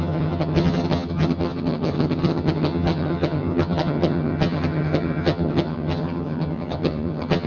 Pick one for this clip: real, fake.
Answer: fake